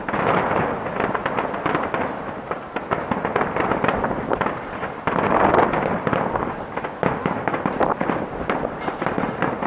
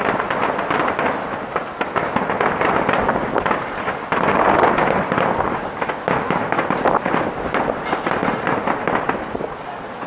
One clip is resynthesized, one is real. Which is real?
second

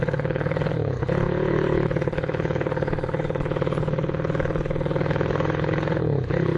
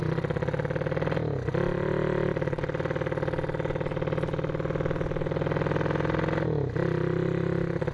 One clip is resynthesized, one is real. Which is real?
second